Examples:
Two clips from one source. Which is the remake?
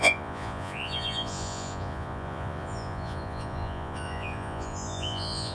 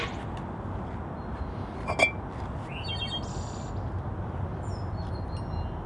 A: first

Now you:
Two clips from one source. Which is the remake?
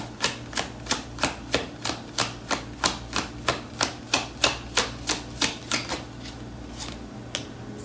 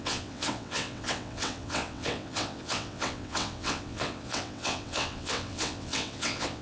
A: second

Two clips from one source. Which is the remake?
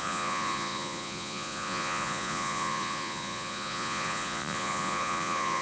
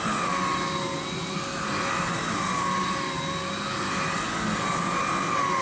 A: first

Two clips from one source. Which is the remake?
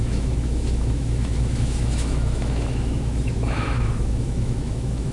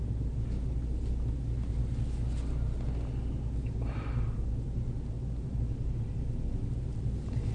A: first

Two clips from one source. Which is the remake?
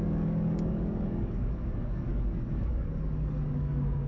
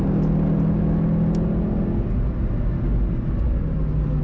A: first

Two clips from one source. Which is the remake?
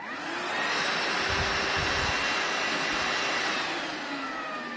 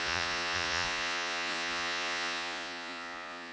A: second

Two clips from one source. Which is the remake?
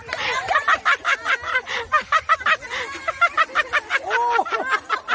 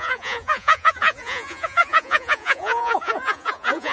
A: second